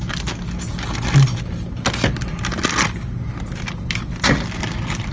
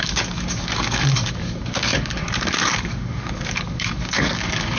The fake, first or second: second